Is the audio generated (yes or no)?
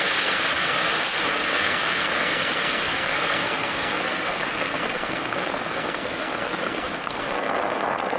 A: yes